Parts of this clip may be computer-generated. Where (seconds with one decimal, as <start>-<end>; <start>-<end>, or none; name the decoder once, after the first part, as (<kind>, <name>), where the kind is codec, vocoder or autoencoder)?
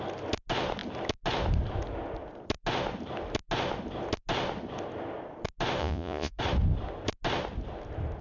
5.8-6.4 (vocoder, Vocos)